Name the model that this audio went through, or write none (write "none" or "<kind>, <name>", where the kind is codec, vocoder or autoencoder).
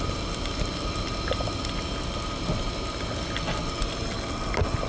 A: none